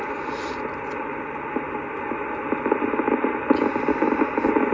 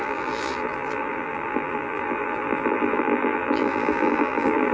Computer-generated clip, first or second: second